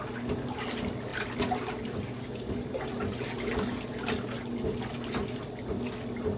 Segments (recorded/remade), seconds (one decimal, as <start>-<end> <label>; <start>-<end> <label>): 0.0-6.4 recorded

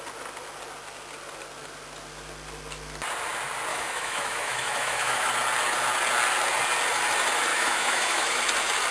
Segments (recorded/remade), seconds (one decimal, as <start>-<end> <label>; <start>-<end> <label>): 0.0-3.7 recorded; 3.7-5.3 remade; 5.3-7.5 recorded; 7.5-8.4 remade; 8.4-8.9 recorded

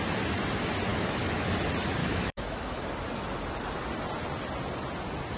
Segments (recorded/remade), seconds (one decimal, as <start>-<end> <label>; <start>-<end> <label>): 0.0-0.9 recorded; 0.9-1.5 remade; 1.5-2.0 recorded; 2.0-2.8 remade; 2.8-5.4 recorded

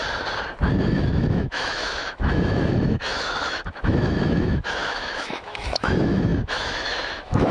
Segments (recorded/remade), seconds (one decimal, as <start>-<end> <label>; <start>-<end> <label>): 0.0-0.9 recorded; 0.9-7.5 remade

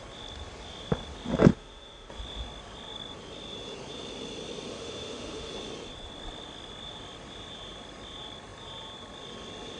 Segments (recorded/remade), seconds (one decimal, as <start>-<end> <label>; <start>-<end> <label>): 0.0-1.5 recorded; 1.5-2.1 remade; 2.1-4.7 recorded; 4.7-5.5 remade; 5.5-9.8 recorded

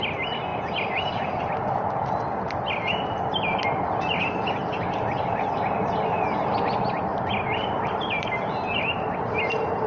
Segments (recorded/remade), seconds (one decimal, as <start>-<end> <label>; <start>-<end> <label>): 0.0-9.9 recorded

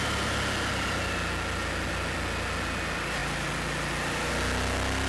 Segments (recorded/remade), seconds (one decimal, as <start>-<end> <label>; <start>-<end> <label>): 0.0-5.1 recorded